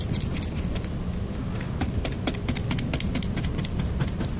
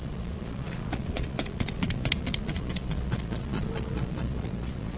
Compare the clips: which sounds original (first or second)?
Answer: first